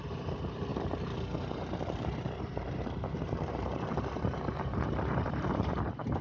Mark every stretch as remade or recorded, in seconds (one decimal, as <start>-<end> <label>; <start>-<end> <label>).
0.0-0.7 remade; 0.7-2.4 recorded; 2.4-6.2 remade